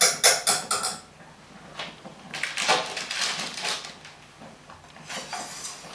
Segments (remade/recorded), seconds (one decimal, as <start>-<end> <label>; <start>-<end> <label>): 0.0-2.1 recorded; 2.1-3.6 remade; 3.6-5.9 recorded